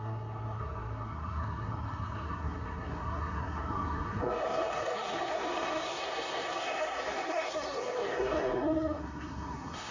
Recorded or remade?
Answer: remade